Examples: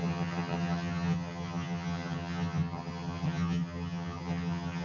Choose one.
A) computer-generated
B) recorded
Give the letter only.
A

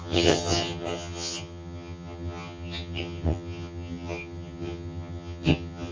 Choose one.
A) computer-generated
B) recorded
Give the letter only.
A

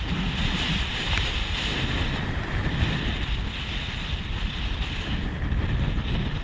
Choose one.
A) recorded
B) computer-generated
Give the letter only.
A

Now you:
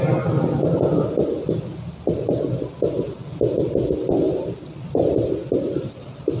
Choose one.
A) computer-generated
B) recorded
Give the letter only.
B